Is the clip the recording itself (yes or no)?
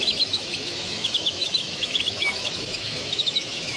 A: no